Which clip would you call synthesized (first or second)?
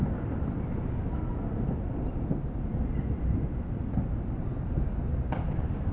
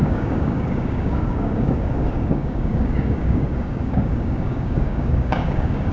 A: second